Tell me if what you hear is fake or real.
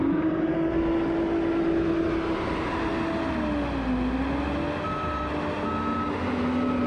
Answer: real